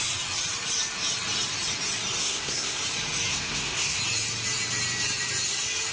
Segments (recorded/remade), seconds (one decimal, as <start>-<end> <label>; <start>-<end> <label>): 0.0-2.2 recorded; 2.2-2.8 remade; 2.8-3.3 recorded; 3.3-4.0 remade; 4.0-5.9 recorded